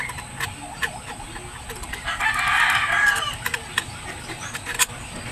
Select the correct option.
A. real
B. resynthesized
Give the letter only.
A